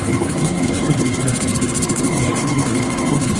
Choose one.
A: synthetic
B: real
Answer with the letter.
A